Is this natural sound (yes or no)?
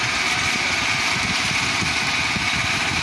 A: yes